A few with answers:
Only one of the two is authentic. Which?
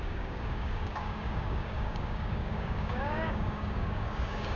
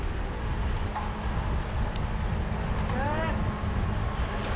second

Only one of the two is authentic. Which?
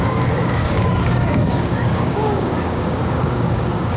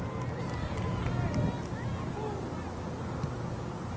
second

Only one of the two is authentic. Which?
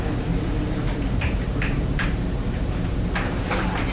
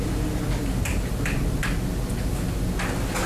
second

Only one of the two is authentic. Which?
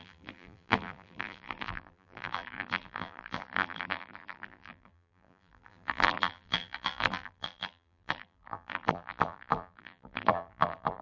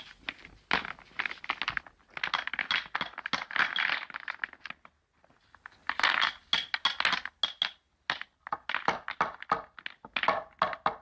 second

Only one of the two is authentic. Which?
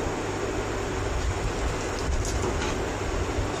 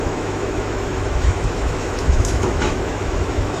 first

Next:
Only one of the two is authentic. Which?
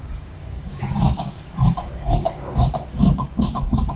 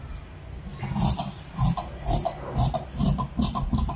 second